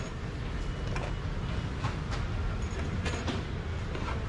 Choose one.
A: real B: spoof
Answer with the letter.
A